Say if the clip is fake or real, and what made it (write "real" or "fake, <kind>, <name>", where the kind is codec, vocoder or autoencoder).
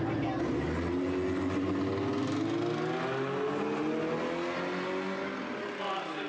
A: real